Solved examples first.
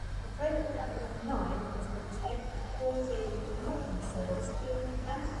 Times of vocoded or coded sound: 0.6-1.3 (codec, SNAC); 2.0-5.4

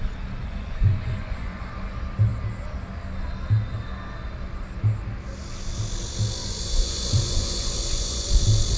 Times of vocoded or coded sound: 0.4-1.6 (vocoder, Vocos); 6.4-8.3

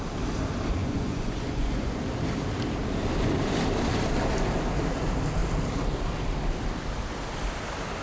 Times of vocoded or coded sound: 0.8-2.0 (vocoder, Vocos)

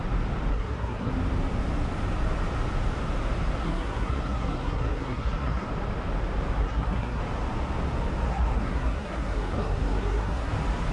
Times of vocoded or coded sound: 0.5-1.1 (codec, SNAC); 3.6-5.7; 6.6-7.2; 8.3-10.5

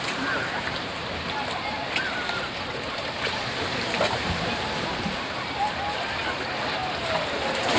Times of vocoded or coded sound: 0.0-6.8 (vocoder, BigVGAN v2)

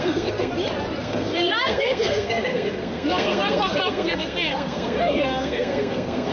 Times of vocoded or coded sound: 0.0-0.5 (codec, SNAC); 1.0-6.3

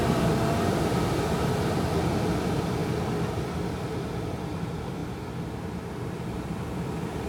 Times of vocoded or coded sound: 0.0-2.8 (vocoder, BigVGAN v2); 4.6-5.0; 5.6-7.3